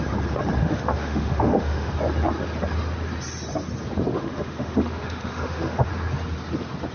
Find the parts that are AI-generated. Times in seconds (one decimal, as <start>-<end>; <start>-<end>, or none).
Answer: 0.6-1.9; 4.1-5.9